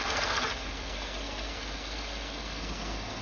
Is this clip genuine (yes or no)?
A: no